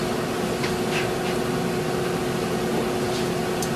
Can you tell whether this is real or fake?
real